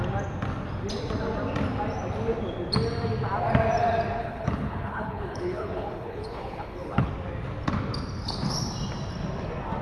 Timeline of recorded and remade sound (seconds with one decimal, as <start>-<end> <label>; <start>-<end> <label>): 0.0-4.2 recorded; 4.2-7.1 remade; 7.1-9.8 recorded